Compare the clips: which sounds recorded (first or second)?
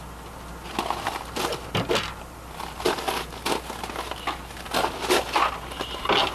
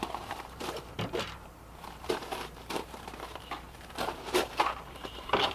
first